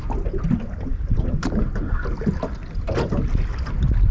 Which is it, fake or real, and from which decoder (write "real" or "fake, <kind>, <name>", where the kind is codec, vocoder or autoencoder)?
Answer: real